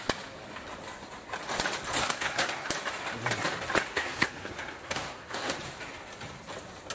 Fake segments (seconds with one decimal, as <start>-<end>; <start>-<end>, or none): 2.0-2.7; 3.9-5.6